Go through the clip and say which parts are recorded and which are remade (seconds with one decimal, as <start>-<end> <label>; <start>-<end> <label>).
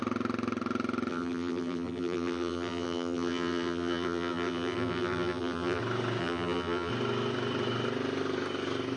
0.0-1.1 recorded; 1.1-5.8 remade; 5.8-6.2 recorded; 6.2-6.9 remade; 6.9-9.0 recorded